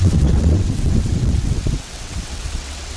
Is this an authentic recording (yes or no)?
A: no